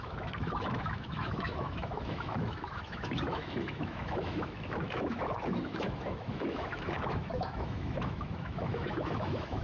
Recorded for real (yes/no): no